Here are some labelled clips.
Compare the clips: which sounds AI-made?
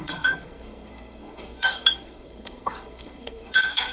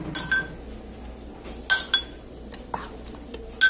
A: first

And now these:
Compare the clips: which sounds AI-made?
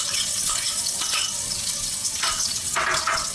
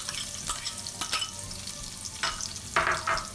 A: first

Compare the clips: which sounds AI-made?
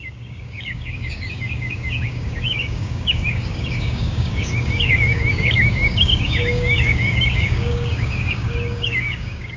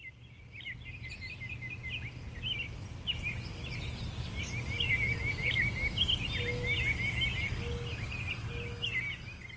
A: first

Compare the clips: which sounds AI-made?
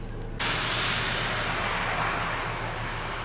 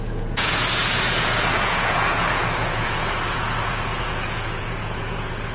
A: second